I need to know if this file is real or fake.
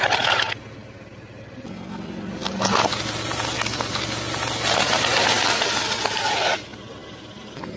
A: real